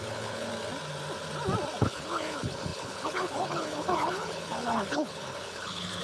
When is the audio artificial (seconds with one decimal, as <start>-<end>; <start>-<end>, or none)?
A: 0.0-0.5; 1.8-6.0